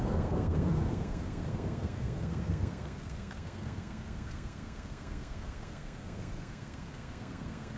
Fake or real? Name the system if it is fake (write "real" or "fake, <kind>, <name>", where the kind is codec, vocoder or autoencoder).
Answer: fake, codec, SNAC